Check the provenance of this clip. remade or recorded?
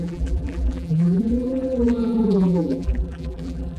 remade